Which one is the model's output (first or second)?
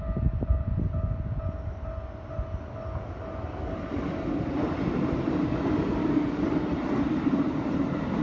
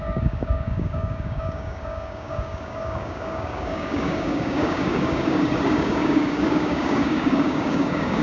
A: second